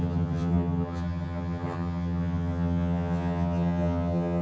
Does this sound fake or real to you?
fake